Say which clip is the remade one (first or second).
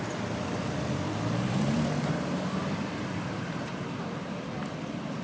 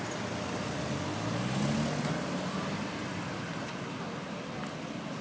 first